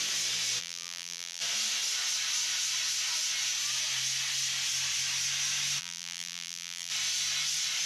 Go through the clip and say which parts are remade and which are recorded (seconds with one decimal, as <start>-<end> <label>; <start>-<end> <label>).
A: 0.0-0.6 recorded; 0.6-1.4 remade; 1.4-5.8 recorded; 5.8-6.9 remade; 6.9-7.9 recorded